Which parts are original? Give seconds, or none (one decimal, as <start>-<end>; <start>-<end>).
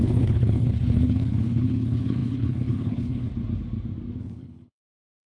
3.3-4.2